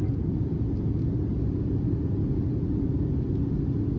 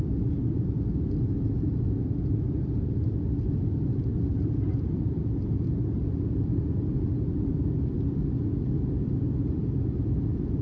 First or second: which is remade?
second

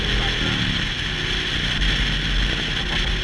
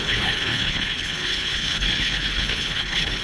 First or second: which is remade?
second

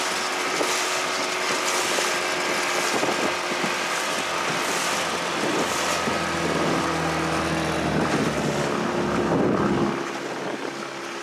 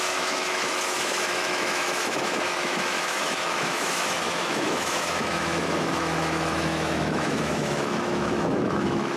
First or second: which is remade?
second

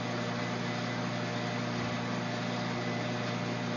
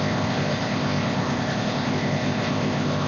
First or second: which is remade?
second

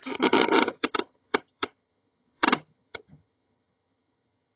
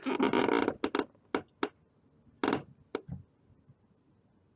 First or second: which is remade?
first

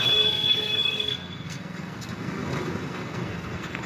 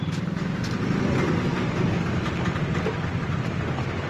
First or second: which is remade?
first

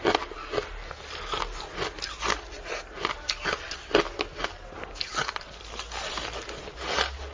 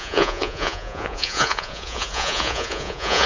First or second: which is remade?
second